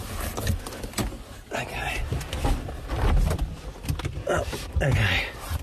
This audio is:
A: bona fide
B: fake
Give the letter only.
B